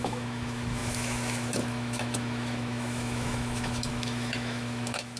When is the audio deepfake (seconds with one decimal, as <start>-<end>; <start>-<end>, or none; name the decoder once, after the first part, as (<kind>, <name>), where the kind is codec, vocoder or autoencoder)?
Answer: 0.0-5.2 (autoencoder, DAC-VAE)